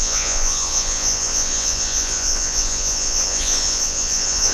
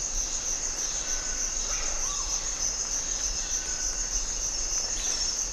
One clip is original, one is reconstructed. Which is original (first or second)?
second